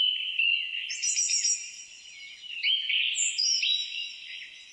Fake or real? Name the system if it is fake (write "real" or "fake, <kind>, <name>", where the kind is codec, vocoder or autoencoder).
real